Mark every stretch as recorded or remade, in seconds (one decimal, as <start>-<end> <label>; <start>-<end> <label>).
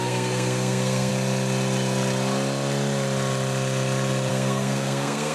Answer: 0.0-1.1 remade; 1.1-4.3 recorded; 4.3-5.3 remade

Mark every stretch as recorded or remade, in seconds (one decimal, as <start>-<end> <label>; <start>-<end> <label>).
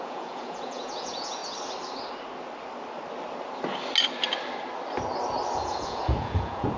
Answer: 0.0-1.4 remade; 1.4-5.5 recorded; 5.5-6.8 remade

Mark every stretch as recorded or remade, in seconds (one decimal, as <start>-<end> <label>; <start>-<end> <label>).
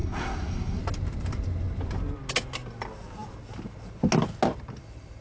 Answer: 0.0-0.8 remade; 0.8-5.2 recorded